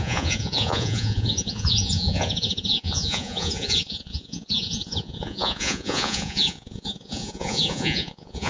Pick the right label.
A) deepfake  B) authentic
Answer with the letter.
A